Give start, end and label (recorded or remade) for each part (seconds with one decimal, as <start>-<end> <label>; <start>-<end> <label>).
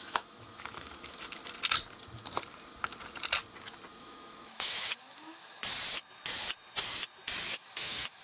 0.0-1.4 remade; 1.4-4.0 recorded; 4.0-5.6 remade; 5.6-7.5 recorded; 7.5-8.2 remade